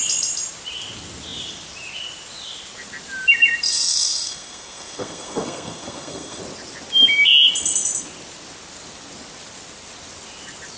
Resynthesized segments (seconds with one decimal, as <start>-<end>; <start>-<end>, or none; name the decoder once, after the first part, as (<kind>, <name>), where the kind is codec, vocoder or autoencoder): 3.7-6.4 (codec, SNAC)